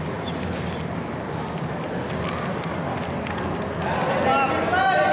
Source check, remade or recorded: recorded